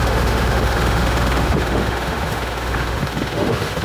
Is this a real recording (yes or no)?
no